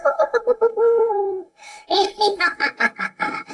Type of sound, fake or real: fake